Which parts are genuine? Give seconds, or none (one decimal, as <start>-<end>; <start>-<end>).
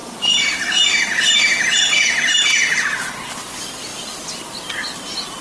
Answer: 0.0-5.4